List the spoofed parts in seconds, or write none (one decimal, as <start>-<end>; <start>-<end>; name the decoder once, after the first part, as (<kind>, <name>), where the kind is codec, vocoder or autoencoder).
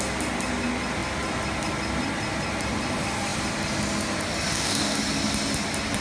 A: 4.5-5.0 (codec, DAC)